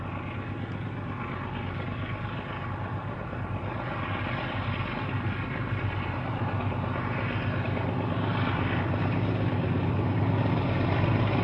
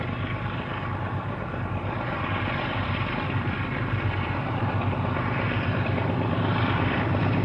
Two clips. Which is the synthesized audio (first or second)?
second